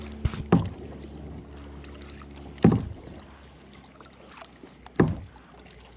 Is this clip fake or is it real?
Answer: real